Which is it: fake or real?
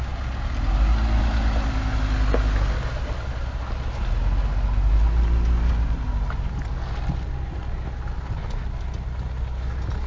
real